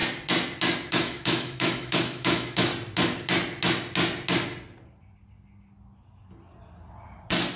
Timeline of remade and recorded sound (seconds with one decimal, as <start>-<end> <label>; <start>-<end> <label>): 0.0-0.9 recorded; 0.9-2.7 remade; 2.7-7.6 recorded